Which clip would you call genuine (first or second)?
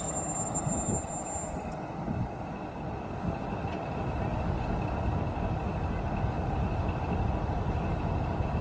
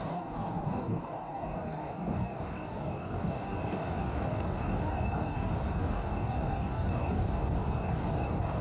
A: first